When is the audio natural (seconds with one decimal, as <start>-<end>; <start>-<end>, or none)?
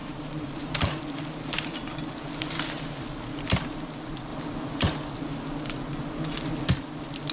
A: 1.6-7.3